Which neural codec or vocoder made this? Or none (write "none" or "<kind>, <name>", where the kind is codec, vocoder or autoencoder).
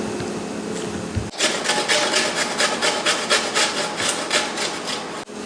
none